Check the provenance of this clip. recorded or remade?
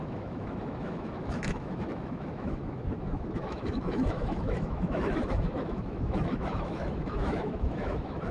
remade